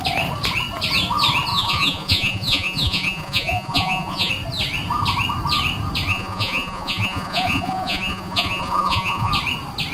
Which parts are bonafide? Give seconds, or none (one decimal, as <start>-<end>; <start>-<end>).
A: 0.0-1.5; 4.3-6.1; 9.3-9.9